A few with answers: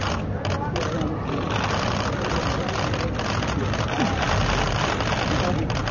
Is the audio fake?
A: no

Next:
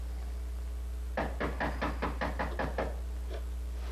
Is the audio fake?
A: no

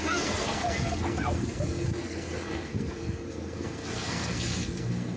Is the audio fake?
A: yes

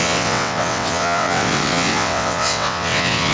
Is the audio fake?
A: yes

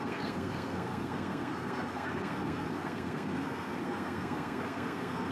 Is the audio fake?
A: yes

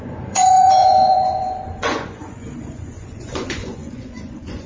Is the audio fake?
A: yes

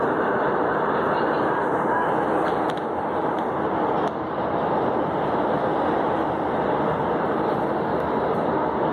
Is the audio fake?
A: no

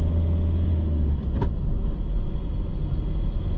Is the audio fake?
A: no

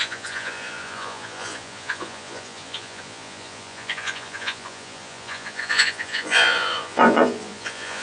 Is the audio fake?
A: yes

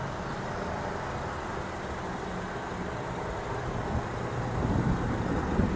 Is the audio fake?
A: no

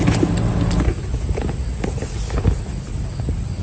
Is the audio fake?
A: no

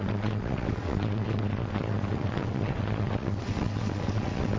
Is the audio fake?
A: yes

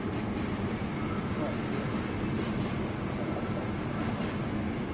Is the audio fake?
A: no